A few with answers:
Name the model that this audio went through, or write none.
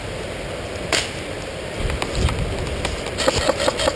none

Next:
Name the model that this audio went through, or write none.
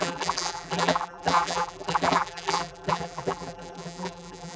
vocoder, BigVGAN v2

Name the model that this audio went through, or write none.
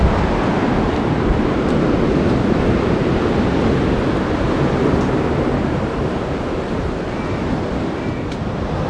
none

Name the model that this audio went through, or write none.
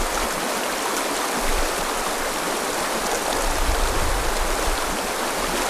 none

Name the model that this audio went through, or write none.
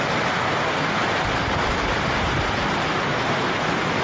none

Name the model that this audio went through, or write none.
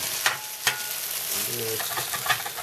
none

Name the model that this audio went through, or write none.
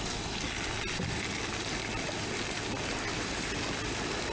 none